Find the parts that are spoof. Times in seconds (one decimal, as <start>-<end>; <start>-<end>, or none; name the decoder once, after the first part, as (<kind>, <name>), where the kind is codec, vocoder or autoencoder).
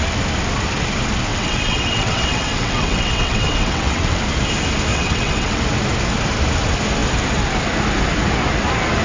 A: 1.3-4.2 (vocoder, WaveNeXt); 4.9-5.6